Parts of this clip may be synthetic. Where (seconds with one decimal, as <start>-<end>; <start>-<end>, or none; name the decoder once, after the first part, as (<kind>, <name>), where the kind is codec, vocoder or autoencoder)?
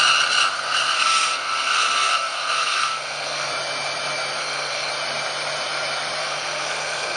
0.5-3.5 (codec, SNAC); 4.4-4.9; 6.2-7.2